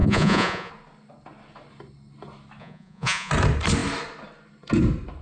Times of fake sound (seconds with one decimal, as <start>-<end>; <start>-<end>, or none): 0.0-0.7; 2.6-3.3